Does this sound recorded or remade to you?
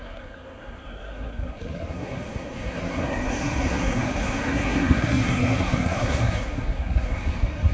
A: remade